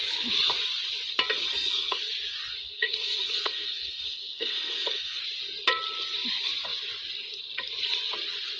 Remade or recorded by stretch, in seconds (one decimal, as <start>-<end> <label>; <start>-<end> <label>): 0.0-1.4 recorded; 1.4-2.0 remade; 2.0-2.6 recorded; 2.6-5.2 remade; 5.2-8.6 recorded